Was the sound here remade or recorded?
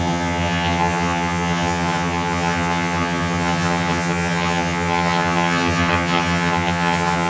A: remade